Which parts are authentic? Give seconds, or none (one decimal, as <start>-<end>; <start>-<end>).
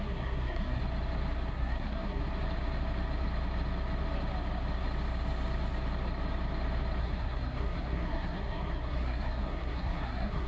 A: 0.8-1.5; 2.2-7.0